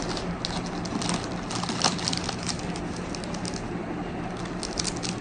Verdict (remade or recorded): recorded